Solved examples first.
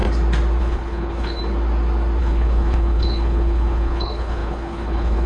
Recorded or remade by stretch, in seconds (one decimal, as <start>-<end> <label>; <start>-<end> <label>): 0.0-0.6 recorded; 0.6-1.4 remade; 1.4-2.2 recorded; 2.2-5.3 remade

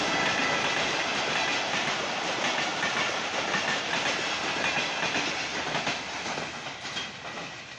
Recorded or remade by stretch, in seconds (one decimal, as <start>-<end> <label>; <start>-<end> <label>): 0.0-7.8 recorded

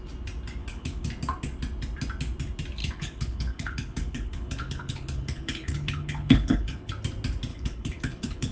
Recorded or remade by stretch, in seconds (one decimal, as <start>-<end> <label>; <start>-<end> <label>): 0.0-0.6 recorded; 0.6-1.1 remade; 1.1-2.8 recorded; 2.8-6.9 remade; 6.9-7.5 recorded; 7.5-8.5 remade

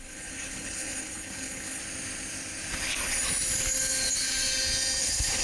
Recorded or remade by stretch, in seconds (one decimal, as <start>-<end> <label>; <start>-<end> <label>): 0.0-1.8 remade; 1.8-5.0 recorded; 5.0-5.4 remade

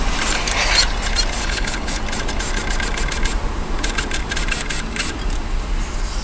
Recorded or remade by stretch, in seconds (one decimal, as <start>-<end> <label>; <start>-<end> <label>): 0.0-1.4 recorded; 1.4-2.0 remade; 2.0-6.2 recorded

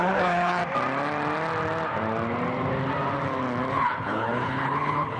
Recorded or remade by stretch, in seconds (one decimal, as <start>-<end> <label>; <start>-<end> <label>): 0.0-0.6 remade; 0.6-3.7 recorded; 3.7-5.2 remade